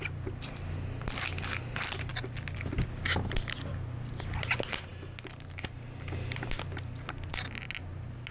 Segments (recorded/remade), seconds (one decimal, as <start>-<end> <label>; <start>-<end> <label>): 0.0-8.3 recorded